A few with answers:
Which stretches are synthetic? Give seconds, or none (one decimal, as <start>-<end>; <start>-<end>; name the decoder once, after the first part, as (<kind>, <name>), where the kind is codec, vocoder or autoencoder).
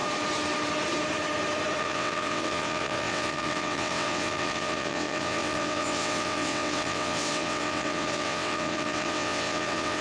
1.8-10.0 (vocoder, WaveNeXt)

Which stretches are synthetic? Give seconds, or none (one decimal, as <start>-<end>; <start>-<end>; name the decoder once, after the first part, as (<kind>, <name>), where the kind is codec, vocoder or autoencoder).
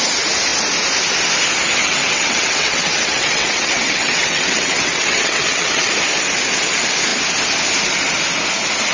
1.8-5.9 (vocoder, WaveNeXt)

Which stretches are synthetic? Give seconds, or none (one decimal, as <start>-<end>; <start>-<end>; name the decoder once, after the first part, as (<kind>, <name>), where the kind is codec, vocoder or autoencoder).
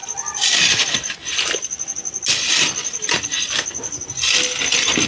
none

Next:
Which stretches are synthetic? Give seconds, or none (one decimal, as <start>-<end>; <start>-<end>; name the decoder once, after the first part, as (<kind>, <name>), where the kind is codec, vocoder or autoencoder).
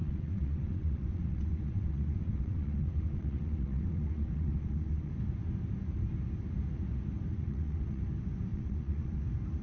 0.0-5.1 (vocoder, WaveNeXt); 7.3-8.0; 8.5-9.2